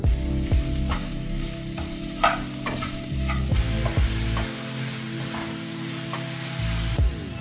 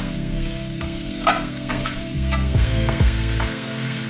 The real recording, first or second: first